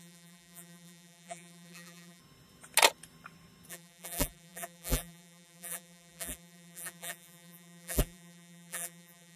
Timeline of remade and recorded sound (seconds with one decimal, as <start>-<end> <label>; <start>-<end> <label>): 0.0-2.2 remade; 2.2-3.7 recorded; 3.7-9.4 remade